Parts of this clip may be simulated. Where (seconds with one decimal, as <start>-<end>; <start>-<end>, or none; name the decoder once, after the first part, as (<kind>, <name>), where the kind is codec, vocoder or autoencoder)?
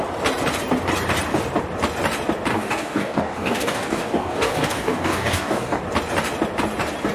2.5-5.8 (codec, DAC)